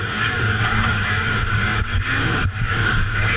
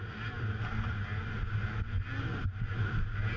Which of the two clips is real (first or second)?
second